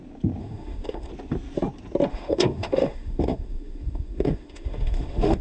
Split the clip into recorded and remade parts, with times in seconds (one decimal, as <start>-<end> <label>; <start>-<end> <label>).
0.0-0.4 recorded; 0.4-1.1 remade; 1.1-2.1 recorded; 2.1-5.4 remade